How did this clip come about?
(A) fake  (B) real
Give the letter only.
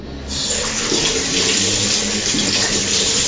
B